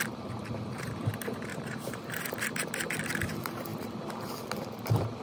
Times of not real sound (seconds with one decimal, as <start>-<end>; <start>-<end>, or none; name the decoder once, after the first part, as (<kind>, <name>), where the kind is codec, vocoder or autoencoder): 1.5-2.2 (vocoder, BigVGAN v2)